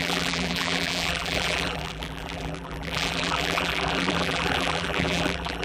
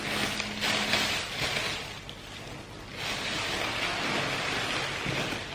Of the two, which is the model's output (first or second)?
first